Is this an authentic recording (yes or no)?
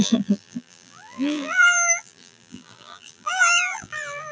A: no